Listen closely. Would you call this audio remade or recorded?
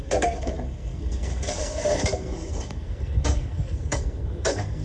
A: remade